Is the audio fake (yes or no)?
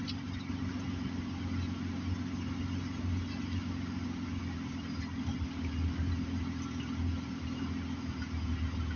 no